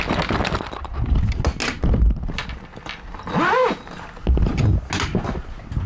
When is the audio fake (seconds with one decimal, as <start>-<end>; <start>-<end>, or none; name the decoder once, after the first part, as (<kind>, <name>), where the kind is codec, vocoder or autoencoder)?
none